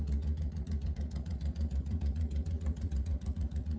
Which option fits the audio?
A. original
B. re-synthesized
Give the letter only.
B